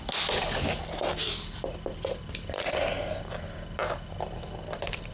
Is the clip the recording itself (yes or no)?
yes